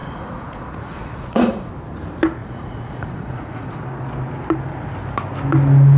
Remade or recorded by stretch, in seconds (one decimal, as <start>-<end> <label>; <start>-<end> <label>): 0.0-1.7 remade; 1.7-2.4 recorded; 2.4-3.8 remade; 3.8-6.0 recorded